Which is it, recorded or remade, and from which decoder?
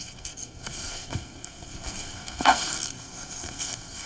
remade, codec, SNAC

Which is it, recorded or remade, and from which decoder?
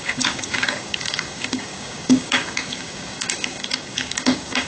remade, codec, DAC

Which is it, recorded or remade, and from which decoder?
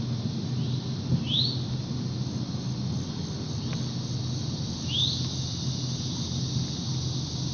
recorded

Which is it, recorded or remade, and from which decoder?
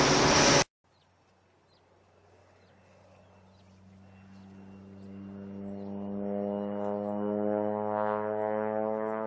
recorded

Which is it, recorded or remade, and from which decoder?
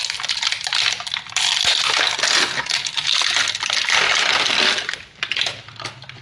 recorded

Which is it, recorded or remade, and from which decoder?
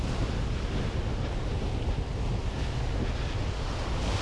recorded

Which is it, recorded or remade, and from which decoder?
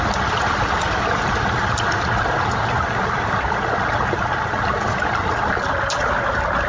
recorded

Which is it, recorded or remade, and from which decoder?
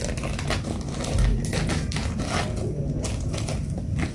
recorded